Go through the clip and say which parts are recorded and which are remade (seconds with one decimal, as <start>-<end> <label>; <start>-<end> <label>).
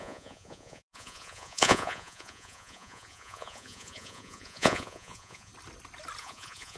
0.0-5.5 remade; 5.5-6.2 recorded; 6.2-6.8 remade